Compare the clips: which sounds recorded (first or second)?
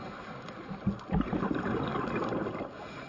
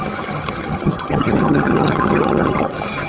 first